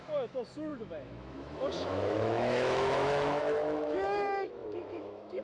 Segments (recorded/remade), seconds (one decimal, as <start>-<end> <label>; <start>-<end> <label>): 0.0-5.4 remade